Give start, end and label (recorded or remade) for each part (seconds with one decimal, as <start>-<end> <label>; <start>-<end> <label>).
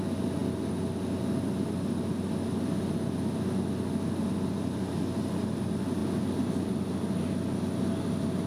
0.0-8.5 recorded